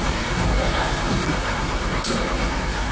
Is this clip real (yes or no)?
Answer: no